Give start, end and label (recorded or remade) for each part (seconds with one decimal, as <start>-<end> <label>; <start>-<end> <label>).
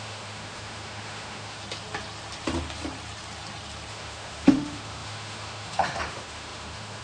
0.0-1.6 remade; 1.6-3.9 recorded; 3.9-7.0 remade